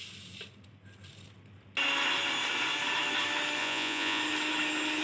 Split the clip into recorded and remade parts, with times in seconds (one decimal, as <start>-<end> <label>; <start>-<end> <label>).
0.0-3.6 recorded; 3.6-4.2 remade; 4.2-5.0 recorded